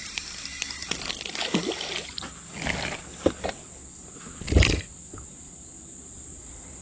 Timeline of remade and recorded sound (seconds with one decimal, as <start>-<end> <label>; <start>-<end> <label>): 0.0-6.3 recorded; 6.3-6.8 remade